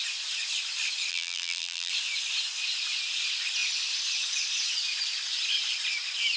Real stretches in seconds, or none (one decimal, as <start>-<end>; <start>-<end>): 0.0-1.1; 1.9-6.4